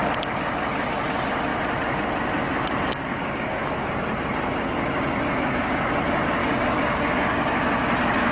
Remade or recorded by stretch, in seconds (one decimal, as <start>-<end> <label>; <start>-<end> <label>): 0.0-3.1 recorded; 3.1-3.7 remade; 3.7-6.4 recorded; 6.4-7.5 remade; 7.5-8.3 recorded